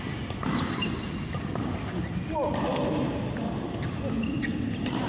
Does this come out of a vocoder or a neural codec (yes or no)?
no